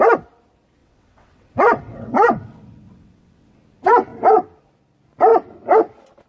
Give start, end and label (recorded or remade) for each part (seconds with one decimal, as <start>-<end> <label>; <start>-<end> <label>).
0.0-0.8 recorded; 0.8-3.6 remade; 3.6-6.3 recorded